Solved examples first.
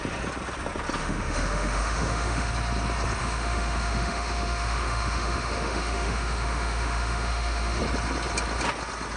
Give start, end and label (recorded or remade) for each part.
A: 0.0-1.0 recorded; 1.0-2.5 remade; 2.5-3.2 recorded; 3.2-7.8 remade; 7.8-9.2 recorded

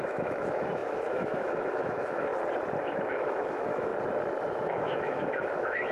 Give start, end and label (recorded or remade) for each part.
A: 0.0-2.3 remade; 2.3-2.8 recorded; 2.8-3.9 remade; 3.9-4.5 recorded; 4.5-5.9 remade

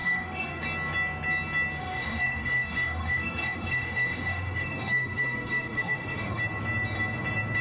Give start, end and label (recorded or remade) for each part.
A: 0.0-0.6 remade; 0.6-1.8 recorded; 1.8-6.4 remade; 6.4-7.6 recorded

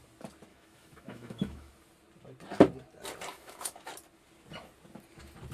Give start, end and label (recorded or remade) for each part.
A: 0.0-0.5 recorded; 0.5-1.7 remade; 1.7-3.3 recorded; 3.3-3.9 remade; 3.9-5.5 recorded

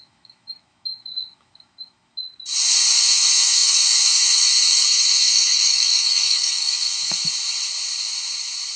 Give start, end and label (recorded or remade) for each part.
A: 0.0-2.2 remade; 2.2-3.0 recorded; 3.0-7.2 remade; 7.2-8.8 recorded

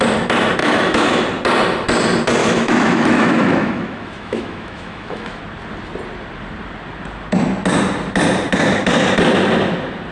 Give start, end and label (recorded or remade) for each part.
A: 0.0-0.6 recorded; 0.6-1.2 remade; 1.2-2.4 recorded; 2.4-5.4 remade; 5.4-10.1 recorded